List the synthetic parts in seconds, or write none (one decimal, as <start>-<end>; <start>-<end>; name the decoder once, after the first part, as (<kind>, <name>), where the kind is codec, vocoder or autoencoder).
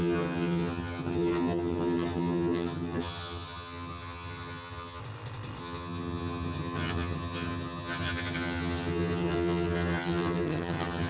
0.0-5.0 (vocoder, HiFi-GAN); 5.6-11.1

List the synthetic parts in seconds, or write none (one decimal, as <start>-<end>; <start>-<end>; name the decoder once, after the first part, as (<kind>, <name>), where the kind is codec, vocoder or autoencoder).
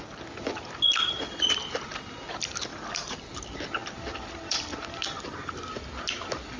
2.7-3.4 (vocoder, BigVGAN v2); 3.8-5.0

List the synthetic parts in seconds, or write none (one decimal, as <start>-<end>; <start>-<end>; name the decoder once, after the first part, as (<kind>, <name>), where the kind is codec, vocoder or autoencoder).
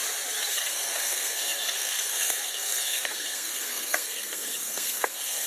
0.5-5.5 (codec, SNAC)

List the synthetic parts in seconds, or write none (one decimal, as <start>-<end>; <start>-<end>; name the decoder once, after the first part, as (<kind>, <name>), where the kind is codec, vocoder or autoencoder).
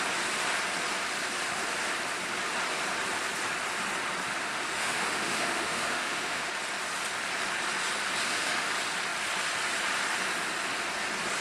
4.4-6.5 (autoencoder, DAC-VAE); 8.2-8.7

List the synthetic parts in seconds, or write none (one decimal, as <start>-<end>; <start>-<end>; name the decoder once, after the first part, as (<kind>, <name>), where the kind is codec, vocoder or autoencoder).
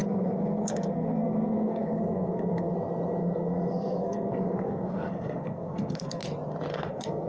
0.0-2.7 (codec, SNAC); 3.2-6.2; 6.7-7.3